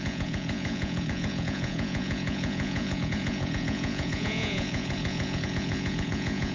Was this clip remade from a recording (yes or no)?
yes